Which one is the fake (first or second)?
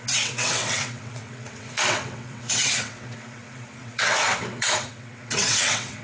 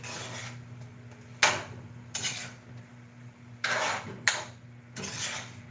first